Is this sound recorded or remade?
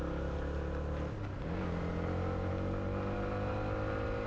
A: recorded